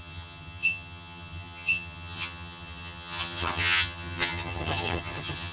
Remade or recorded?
remade